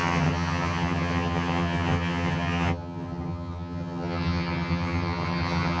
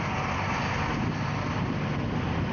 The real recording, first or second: second